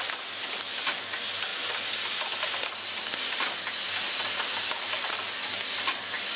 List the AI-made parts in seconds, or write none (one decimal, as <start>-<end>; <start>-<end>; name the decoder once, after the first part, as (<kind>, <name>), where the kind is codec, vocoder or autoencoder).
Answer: none